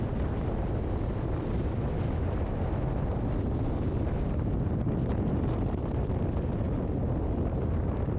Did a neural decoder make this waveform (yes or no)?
yes